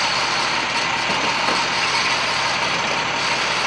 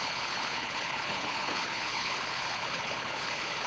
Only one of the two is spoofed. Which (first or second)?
second